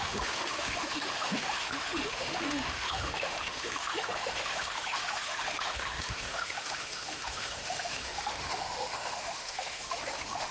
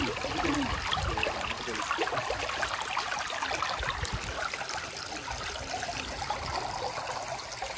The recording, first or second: second